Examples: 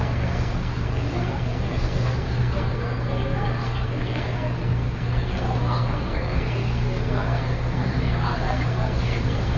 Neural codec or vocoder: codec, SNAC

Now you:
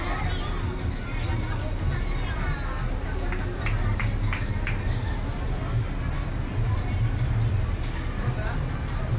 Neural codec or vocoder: none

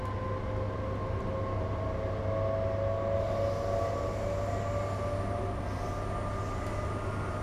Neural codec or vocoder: none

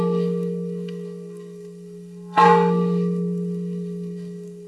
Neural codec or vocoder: codec, SNAC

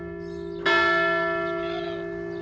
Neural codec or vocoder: none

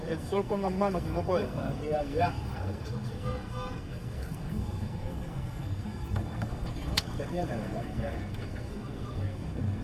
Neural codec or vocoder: codec, SNAC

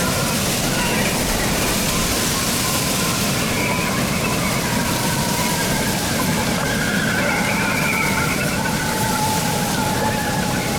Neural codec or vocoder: none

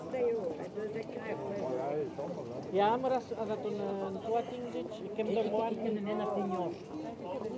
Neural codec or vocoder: none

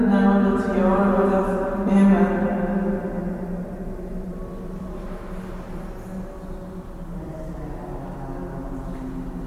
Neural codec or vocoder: none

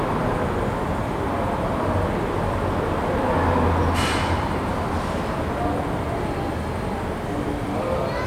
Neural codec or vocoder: none